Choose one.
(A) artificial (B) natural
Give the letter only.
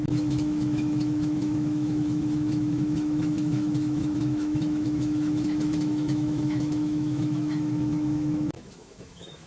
A